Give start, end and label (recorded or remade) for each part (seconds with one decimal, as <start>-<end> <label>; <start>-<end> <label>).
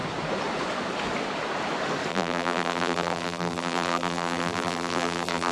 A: 0.0-2.1 recorded; 2.1-5.5 remade